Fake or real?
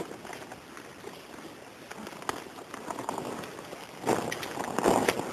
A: real